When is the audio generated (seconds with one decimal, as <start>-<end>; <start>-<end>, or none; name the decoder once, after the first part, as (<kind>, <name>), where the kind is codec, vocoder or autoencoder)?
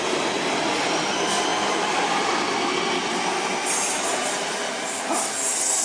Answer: none